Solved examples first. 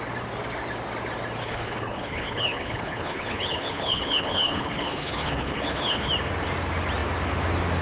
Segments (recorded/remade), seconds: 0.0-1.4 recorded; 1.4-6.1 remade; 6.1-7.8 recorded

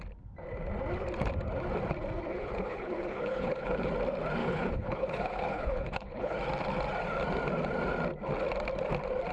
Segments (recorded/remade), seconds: 0.0-2.3 recorded; 2.3-3.9 remade; 3.9-4.4 recorded; 4.4-6.4 remade; 6.4-9.3 recorded

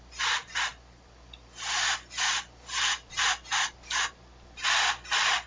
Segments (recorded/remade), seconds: 0.0-5.5 recorded

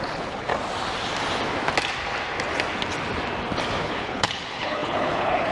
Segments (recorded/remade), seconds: 0.0-0.5 remade; 0.5-3.8 recorded; 3.8-5.5 remade